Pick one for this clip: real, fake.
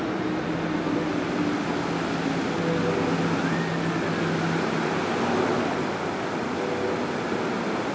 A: real